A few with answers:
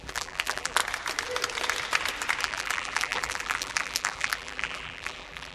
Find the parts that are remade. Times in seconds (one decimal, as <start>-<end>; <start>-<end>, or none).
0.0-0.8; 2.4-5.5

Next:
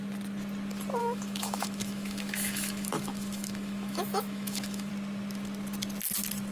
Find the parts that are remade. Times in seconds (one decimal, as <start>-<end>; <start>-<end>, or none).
1.0-4.9

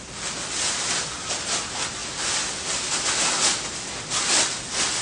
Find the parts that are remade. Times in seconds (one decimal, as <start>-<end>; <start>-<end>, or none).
none

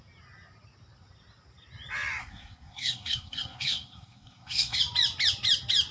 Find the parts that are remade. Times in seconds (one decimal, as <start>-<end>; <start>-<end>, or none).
2.2-4.8

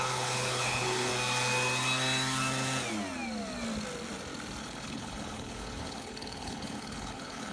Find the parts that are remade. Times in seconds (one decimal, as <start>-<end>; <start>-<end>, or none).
0.0-1.1; 4.6-7.5

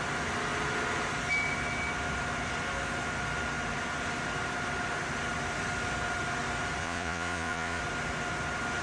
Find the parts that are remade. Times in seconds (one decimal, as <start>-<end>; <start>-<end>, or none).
6.8-7.8